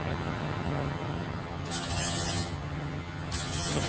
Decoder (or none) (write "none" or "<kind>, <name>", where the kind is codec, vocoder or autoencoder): vocoder, HiFi-GAN